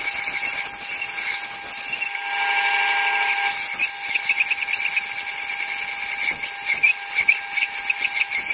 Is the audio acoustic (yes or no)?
yes